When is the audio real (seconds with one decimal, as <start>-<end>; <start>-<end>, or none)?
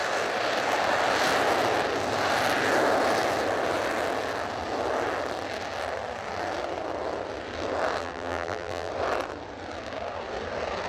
0.0-8.0; 8.9-10.9